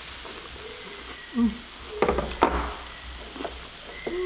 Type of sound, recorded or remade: recorded